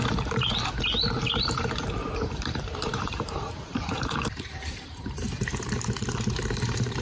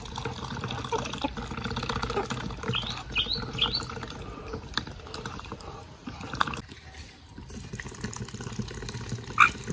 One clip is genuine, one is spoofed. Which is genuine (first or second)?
second